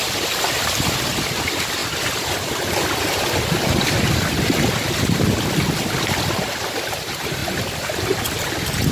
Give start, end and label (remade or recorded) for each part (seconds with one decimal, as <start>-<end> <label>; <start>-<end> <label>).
0.0-1.8 recorded; 1.8-6.1 remade; 6.1-7.4 recorded; 7.4-8.5 remade; 8.5-8.9 recorded